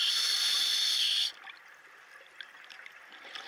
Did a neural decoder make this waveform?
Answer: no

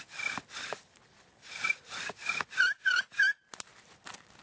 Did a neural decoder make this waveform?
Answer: no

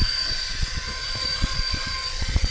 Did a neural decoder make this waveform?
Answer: yes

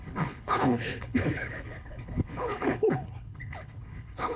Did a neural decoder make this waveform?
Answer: yes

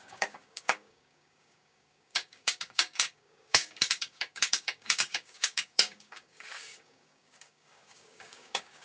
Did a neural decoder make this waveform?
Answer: yes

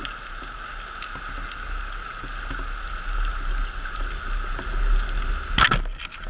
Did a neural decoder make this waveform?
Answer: no